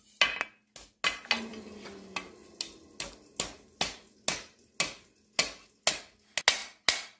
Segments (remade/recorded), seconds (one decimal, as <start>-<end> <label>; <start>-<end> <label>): 0.0-7.2 recorded